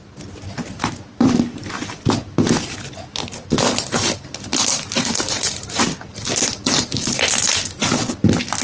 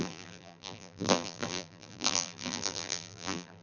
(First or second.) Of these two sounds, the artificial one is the second